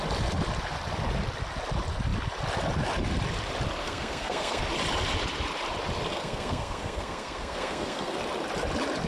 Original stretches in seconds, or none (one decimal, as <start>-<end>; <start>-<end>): 0.0-3.8; 4.6-6.1; 8.2-9.1